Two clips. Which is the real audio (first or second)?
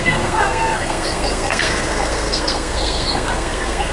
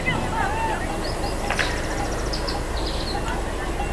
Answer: second